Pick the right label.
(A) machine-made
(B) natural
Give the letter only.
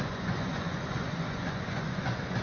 A